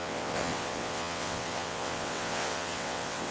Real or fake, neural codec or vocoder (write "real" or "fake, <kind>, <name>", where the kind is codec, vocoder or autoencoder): fake, vocoder, WaveNeXt